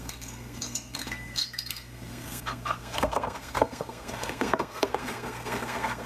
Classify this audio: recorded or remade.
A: remade